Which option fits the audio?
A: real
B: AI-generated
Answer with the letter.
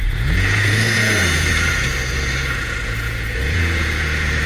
B